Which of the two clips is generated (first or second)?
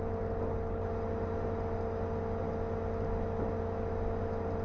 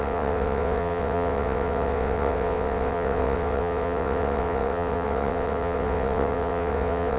second